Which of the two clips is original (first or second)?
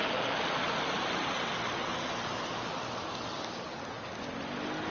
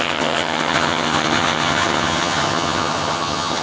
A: first